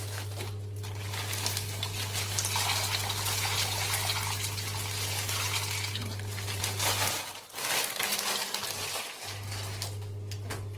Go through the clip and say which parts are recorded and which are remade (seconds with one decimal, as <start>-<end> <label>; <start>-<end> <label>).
0.0-10.8 recorded